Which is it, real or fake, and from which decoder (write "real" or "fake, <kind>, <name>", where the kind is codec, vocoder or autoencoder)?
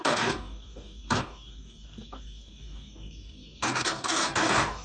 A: fake, codec, DAC